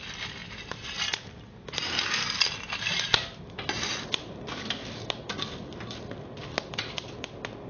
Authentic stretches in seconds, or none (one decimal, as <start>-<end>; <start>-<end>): 0.0-7.7